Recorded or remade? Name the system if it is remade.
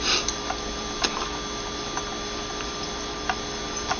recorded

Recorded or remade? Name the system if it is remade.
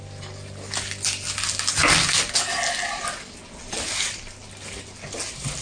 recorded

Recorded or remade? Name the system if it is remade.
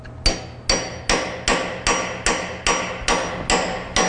recorded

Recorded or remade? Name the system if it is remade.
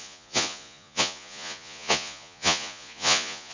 remade, vocoder, Vocos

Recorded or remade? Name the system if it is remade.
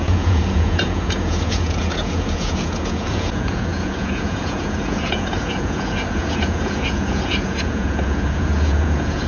remade, vocoder, Vocos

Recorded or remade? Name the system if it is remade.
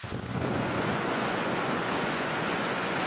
remade, vocoder, Vocos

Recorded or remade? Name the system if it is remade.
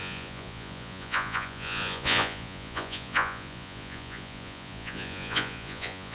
remade, vocoder, Vocos